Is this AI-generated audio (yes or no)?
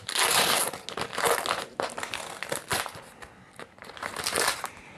no